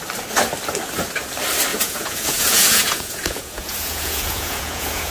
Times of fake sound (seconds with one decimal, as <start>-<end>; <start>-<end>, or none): 1.7-5.1